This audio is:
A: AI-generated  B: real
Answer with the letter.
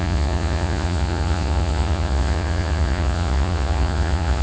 A